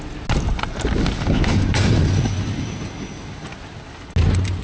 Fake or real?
real